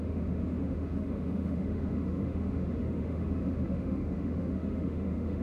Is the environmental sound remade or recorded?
remade